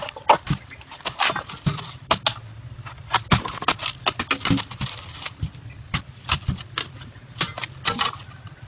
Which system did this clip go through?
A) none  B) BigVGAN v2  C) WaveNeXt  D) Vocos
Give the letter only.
A